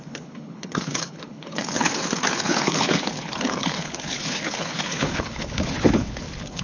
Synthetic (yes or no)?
yes